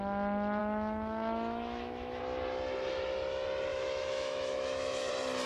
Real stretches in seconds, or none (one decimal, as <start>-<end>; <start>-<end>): 0.0-0.6; 2.2-3.7; 5.1-5.5